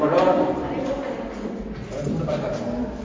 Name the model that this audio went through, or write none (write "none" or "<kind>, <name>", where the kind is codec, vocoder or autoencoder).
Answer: none